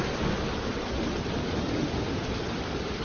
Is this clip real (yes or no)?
yes